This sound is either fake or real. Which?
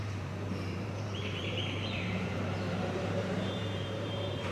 fake